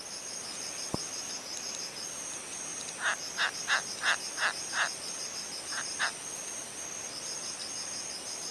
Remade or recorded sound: recorded